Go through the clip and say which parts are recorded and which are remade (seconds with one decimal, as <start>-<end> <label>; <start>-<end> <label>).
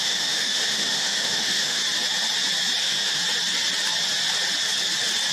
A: 0.0-1.8 remade; 1.8-2.8 recorded; 2.8-3.2 remade; 3.2-5.3 recorded